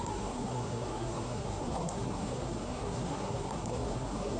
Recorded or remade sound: remade